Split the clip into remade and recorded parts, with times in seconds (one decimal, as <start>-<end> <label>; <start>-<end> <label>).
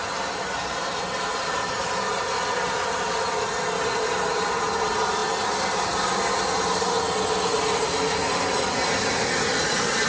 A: 0.0-10.1 recorded